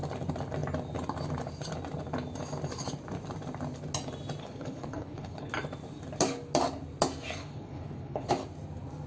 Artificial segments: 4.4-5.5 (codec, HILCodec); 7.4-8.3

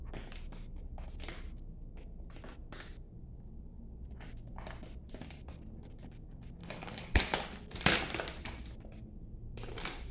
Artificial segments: 6.6-7.2 (codec, HILCodec)

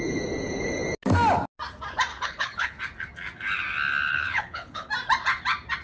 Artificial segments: 2.1-2.8 (codec, HILCodec); 4.1-4.9

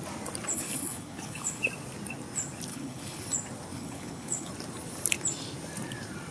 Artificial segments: 0.5-1.6 (codec, HILCodec); 2.7-3.2; 3.7-4.5

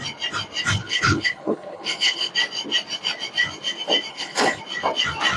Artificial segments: 0.8-2.3 (codec, HILCodec); 4.1-4.6

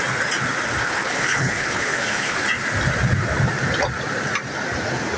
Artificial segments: 0.8-2.4 (codec, HILCodec)

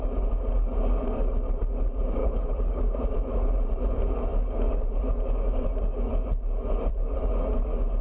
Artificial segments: 2.2-2.8 (codec, HILCodec)